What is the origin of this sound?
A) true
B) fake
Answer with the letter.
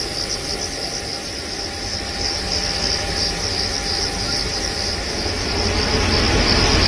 A